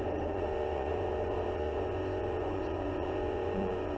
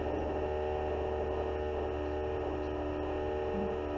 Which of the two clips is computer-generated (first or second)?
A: first